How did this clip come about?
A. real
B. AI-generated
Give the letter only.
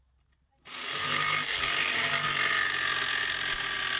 A